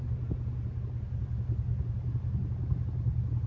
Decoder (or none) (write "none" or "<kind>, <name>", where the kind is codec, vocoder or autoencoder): none